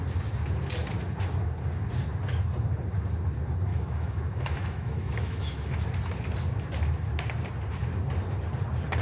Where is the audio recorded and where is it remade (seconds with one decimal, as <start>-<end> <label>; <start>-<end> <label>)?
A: 0.0-3.7 recorded; 3.7-5.8 remade; 5.8-9.0 recorded